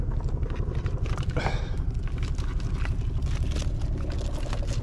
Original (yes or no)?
yes